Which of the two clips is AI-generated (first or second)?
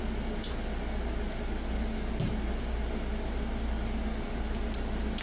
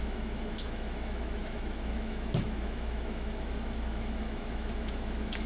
second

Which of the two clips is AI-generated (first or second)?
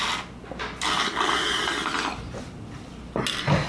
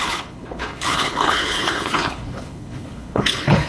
second